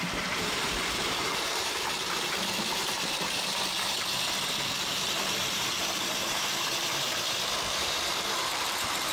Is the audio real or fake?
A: fake